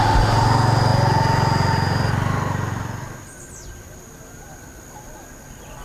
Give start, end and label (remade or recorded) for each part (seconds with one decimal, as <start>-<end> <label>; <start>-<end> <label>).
0.0-5.8 recorded